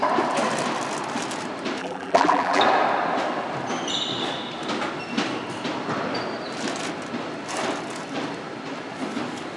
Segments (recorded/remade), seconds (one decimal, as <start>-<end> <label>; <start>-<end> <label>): 0.0-1.8 recorded; 1.8-2.6 remade; 2.6-9.6 recorded